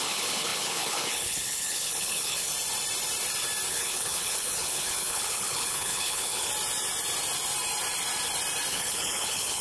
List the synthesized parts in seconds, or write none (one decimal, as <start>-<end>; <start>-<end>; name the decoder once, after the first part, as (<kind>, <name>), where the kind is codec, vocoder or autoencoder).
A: 0.0-2.5 (codec, HILCodec); 3.7-6.5; 8.7-9.6